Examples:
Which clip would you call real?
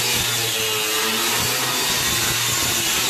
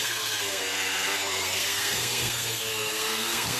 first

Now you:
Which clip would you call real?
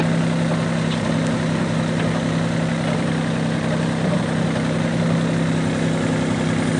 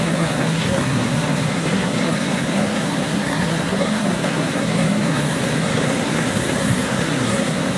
first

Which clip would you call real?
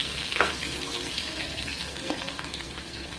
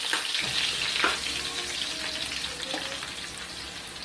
second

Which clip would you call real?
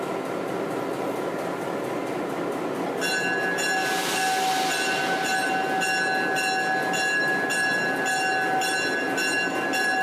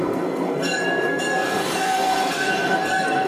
first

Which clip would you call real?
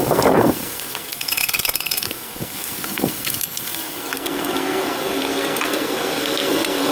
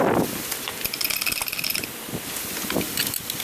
second